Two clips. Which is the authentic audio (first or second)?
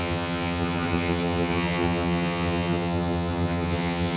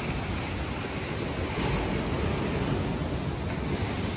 second